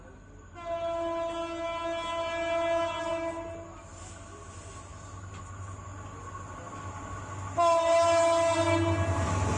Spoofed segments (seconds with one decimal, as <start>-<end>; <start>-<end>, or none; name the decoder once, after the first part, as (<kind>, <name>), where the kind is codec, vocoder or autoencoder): none

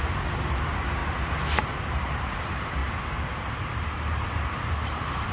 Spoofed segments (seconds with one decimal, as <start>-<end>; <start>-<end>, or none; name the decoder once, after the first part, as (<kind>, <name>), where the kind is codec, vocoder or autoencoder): 0.0-5.3 (vocoder, BigVGAN v2)

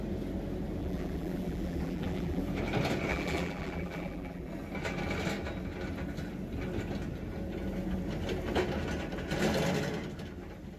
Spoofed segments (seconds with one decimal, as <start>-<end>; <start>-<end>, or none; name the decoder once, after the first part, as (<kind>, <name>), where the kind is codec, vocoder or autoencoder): 0.8-2.4 (vocoder, BigVGAN v2); 3.1-4.5